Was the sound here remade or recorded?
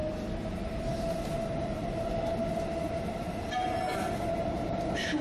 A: recorded